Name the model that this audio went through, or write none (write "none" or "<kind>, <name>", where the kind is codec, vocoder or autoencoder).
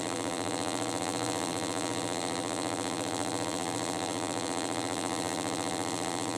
vocoder, BigVGAN v2